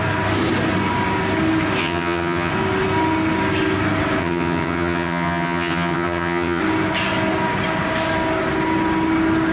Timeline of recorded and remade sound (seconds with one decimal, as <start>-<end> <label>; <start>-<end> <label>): 0.0-1.8 recorded; 1.8-2.5 remade; 2.5-4.2 recorded; 4.2-6.6 remade; 6.6-9.5 recorded